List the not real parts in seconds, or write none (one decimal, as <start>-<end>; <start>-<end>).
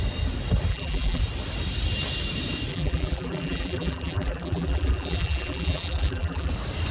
0.7-1.2; 2.7-6.5